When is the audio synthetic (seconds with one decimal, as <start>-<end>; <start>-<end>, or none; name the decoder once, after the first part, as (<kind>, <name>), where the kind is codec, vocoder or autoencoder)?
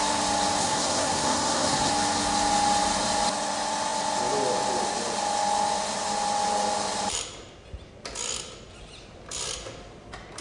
0.6-1.9 (codec, SNAC)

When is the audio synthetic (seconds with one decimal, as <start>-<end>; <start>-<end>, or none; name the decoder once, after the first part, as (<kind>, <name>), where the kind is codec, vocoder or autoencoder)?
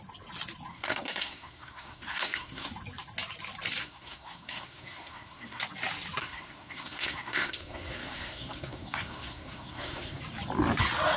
0.7-2.7 (codec, SNAC); 3.8-5.6; 6.2-10.2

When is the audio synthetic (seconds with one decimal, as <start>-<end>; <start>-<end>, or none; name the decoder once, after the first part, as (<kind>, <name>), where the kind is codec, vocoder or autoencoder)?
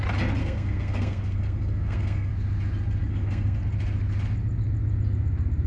0.4-2.3 (codec, SNAC); 3.0-3.6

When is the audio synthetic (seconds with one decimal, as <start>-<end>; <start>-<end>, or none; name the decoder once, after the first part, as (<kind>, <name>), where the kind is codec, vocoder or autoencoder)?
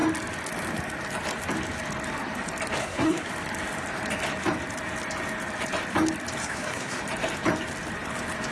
2.8-3.3 (codec, SNAC); 6.4-7.0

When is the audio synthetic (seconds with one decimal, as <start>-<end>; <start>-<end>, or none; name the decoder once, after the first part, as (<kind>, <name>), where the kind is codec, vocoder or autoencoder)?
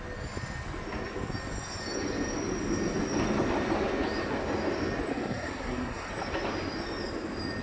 5.1-6.1 (codec, SNAC)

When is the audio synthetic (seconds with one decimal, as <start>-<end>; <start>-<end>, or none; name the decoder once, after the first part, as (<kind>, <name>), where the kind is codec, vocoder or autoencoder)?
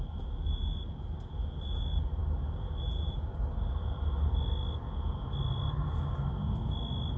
none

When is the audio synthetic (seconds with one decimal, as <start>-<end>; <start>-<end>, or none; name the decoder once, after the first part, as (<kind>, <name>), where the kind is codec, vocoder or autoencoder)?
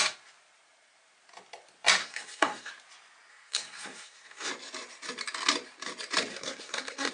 2.0-2.7 (codec, SNAC); 3.3-4.5; 6.3-7.1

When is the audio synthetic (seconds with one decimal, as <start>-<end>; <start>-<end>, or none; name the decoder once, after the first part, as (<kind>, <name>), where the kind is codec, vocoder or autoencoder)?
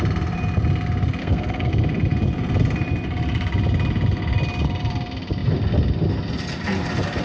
1.2-1.7 (codec, SNAC)